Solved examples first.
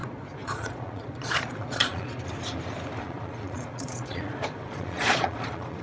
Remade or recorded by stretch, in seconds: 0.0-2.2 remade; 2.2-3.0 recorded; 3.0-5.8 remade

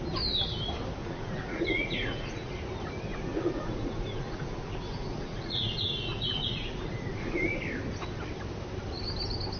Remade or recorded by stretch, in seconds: 0.0-1.0 recorded; 1.0-2.5 remade; 2.5-3.1 recorded; 3.1-7.6 remade; 7.6-9.6 recorded

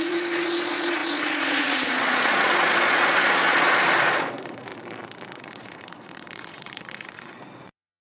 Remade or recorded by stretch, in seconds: 0.0-4.7 remade; 4.7-5.3 recorded; 5.3-8.0 remade